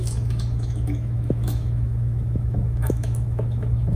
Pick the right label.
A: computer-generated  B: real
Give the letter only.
A